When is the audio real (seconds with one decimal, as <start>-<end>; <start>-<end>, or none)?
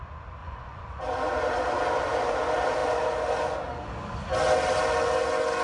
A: 0.0-0.4; 1.0-5.6